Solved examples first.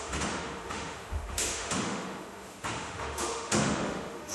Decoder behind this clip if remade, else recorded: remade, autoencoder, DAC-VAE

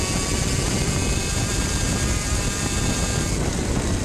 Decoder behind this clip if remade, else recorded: recorded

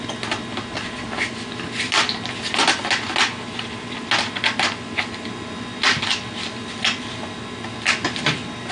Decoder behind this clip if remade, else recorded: recorded